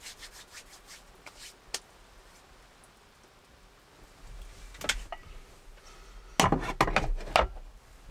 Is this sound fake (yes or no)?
no